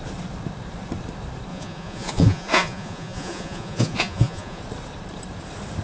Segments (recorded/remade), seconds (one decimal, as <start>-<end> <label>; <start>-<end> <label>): 0.0-1.5 recorded; 1.5-4.6 remade; 4.6-5.8 recorded